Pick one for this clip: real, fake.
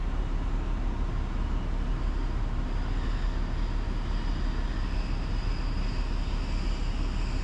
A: real